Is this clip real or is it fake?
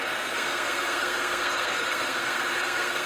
fake